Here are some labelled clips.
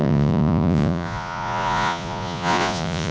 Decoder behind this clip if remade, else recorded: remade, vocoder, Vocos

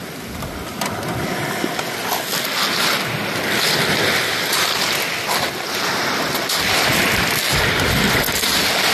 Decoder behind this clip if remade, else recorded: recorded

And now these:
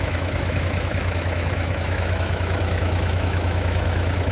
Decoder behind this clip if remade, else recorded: remade, autoencoder, DAC-VAE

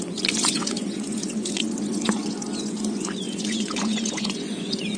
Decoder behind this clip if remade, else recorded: remade, vocoder, Vocos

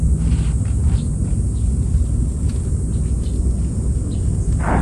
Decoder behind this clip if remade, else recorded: recorded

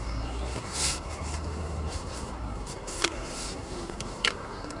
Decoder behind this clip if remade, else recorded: remade, codec, SNAC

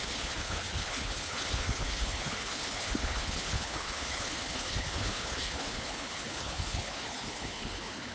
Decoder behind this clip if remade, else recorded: remade, codec, HILCodec